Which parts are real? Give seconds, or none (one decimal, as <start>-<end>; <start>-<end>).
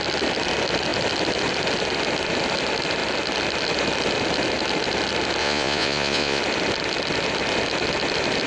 0.0-5.4; 6.4-8.5